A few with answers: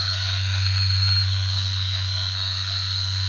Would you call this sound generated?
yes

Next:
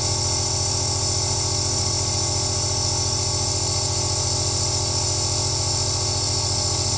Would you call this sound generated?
no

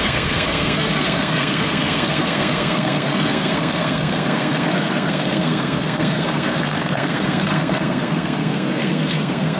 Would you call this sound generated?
yes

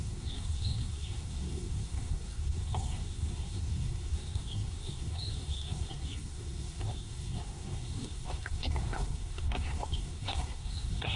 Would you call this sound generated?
yes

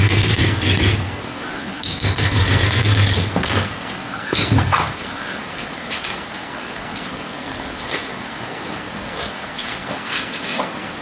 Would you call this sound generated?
yes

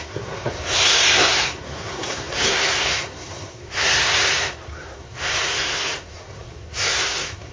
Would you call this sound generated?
yes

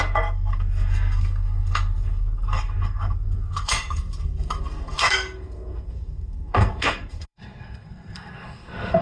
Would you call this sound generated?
yes